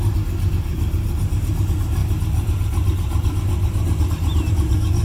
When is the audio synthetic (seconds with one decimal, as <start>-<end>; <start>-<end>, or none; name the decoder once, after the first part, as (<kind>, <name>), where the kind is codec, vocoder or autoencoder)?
none